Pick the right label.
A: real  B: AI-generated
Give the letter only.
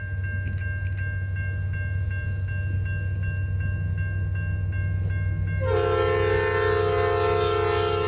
A